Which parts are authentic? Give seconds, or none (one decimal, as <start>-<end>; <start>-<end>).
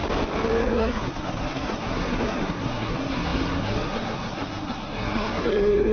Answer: 0.0-0.6